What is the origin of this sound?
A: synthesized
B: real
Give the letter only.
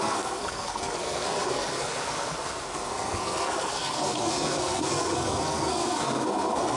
A